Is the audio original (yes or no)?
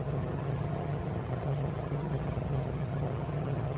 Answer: no